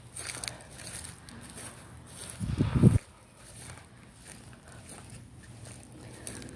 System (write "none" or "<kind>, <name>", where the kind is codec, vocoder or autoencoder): none